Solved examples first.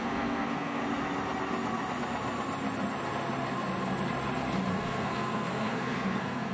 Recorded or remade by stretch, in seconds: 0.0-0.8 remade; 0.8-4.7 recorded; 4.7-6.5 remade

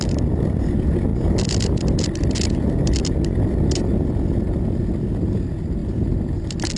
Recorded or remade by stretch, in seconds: 0.0-6.8 recorded

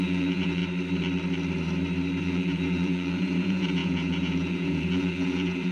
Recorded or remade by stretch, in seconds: 0.0-0.6 remade; 0.6-2.2 recorded; 2.2-5.7 remade